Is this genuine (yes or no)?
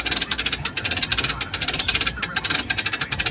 yes